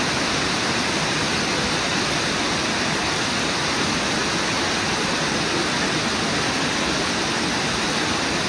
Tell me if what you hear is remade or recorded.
recorded